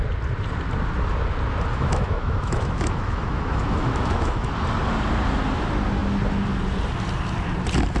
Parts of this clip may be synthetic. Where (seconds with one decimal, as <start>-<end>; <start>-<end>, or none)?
1.7-4.5